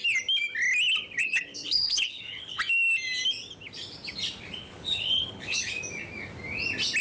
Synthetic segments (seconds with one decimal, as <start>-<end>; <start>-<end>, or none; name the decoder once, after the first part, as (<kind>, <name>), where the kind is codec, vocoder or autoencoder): 1.2-2.6 (codec, HILCodec); 4.6-5.7